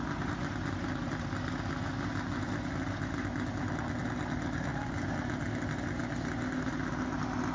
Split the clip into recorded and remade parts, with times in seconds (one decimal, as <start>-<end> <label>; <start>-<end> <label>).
0.0-7.5 recorded